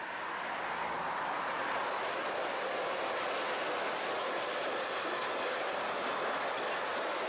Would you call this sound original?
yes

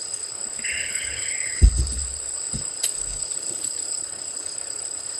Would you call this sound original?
no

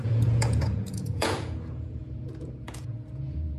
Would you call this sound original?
no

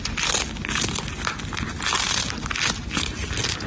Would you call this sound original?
yes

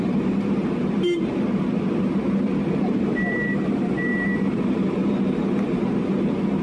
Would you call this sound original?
no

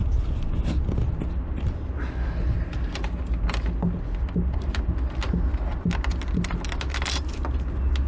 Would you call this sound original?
yes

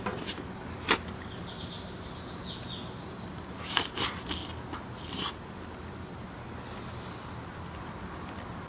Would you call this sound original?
yes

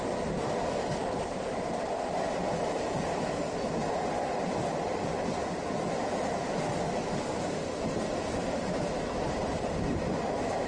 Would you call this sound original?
yes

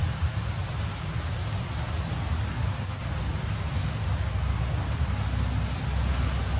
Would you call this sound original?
yes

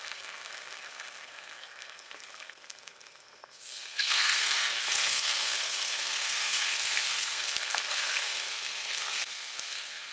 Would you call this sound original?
no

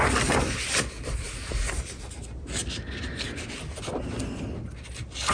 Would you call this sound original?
yes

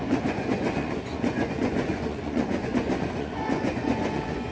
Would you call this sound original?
no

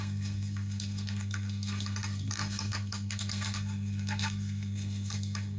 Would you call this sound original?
no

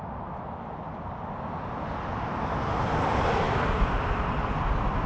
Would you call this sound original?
yes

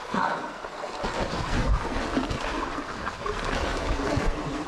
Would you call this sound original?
no